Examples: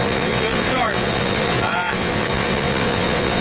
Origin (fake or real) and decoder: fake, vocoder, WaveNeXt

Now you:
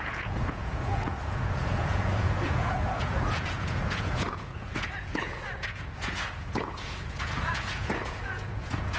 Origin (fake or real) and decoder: fake, vocoder, Vocos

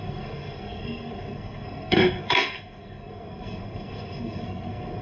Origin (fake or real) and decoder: fake, codec, SNAC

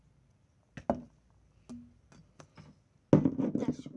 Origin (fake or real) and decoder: real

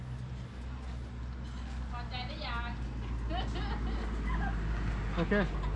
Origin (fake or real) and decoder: real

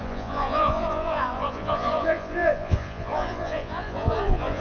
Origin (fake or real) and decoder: fake, vocoder, Vocos